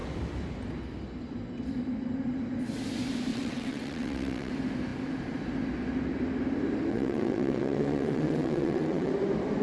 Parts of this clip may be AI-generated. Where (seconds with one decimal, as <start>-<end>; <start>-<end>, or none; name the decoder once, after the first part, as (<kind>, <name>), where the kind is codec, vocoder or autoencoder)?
3.3-4.5 (vocoder, WaveNeXt); 6.9-9.1